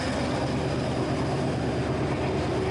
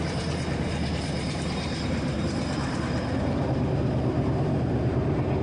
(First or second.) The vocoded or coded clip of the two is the second